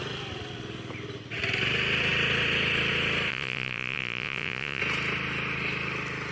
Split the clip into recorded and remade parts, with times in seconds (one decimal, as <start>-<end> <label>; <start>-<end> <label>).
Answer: 0.0-3.3 recorded; 3.3-4.8 remade; 4.8-6.3 recorded